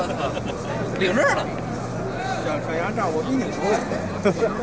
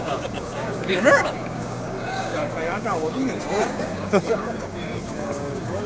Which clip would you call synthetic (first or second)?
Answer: second